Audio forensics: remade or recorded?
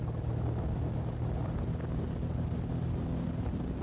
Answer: recorded